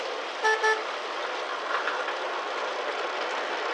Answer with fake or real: real